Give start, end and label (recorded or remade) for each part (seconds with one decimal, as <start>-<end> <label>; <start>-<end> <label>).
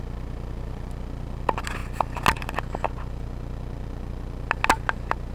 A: 0.0-5.3 recorded